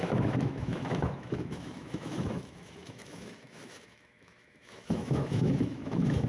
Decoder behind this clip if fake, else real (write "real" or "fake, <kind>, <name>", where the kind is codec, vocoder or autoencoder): fake, autoencoder, DAC-VAE